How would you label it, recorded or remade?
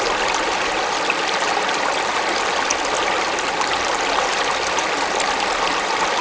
recorded